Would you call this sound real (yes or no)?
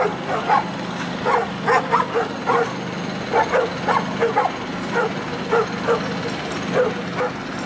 yes